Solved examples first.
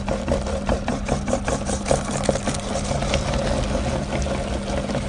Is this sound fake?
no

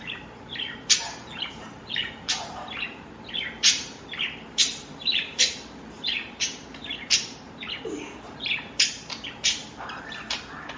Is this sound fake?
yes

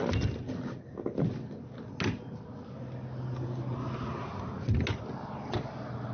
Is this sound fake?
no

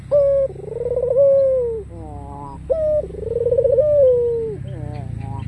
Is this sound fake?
no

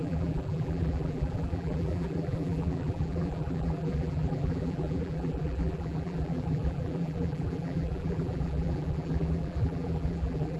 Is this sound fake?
yes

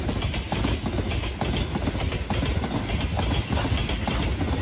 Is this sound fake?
no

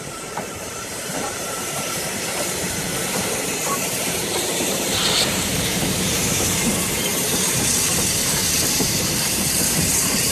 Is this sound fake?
yes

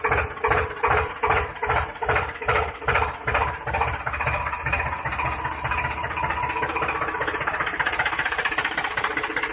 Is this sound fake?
yes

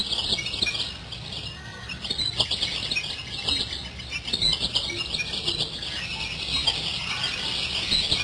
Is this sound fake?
no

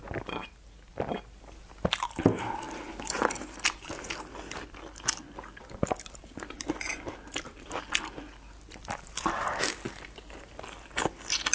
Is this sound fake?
no